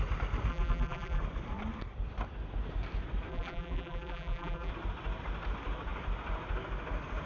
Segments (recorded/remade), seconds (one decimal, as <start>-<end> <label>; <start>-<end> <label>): 0.0-0.5 recorded; 0.5-1.2 remade; 1.2-3.3 recorded; 3.3-4.7 remade; 4.7-7.3 recorded